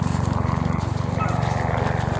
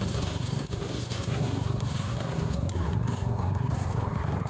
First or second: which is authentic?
first